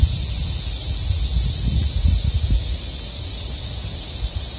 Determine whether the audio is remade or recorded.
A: recorded